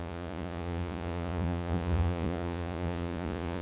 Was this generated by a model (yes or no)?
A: yes